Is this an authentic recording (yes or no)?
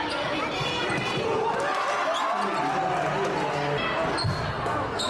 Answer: yes